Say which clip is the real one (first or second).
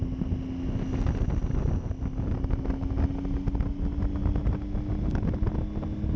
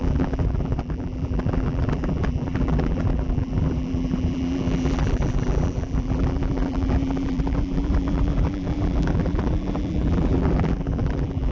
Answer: first